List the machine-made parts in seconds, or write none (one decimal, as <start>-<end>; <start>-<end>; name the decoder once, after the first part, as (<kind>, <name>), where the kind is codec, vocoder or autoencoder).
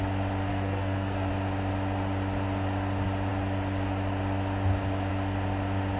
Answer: 0.5-1.3 (codec, SNAC)